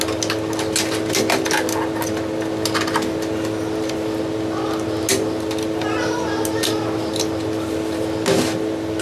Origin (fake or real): real